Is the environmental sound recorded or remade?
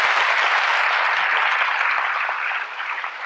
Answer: recorded